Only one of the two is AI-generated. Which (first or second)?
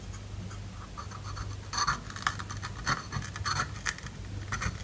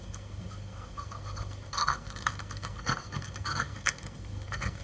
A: second